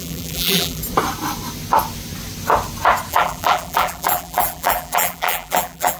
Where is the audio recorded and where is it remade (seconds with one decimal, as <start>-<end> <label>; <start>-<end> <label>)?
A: 0.0-0.8 remade; 0.8-3.1 recorded; 3.1-6.0 remade